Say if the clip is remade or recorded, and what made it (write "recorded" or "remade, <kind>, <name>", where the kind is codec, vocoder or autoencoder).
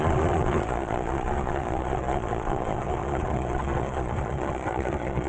remade, vocoder, Vocos